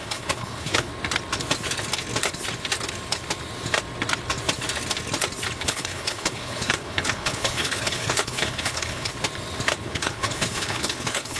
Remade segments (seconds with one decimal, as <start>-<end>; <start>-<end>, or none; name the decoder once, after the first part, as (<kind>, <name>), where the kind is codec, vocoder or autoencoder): 0.0-0.9 (codec, HILCodec); 5.6-9.1; 9.8-11.4